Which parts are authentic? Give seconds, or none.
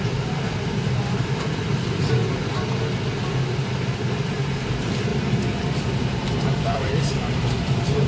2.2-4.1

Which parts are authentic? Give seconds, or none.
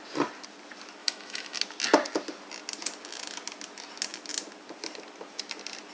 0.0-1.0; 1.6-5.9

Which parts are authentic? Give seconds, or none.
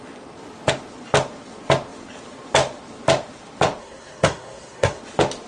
0.0-3.8; 5.0-5.5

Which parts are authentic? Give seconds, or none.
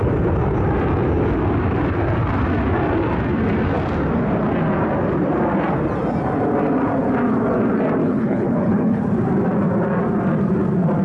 0.0-8.0; 9.0-11.0